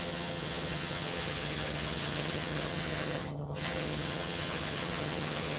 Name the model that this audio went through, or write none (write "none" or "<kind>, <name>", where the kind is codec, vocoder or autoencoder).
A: vocoder, HiFi-GAN